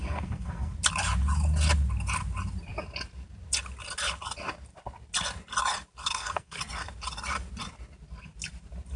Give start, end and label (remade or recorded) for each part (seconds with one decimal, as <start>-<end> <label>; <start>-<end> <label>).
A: 0.0-0.7 remade; 0.7-6.0 recorded; 6.0-6.6 remade; 6.6-9.0 recorded